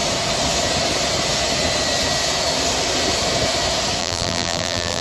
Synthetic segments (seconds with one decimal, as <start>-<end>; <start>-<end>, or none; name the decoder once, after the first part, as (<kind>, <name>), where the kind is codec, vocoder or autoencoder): 4.0-5.0 (vocoder, BigVGAN v2)